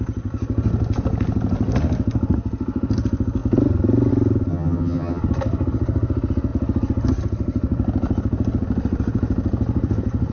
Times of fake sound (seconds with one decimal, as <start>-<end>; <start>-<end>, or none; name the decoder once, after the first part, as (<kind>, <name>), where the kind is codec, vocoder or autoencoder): 4.5-5.2 (vocoder, HiFi-GAN)